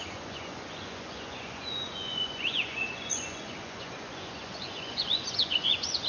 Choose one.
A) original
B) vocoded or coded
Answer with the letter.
B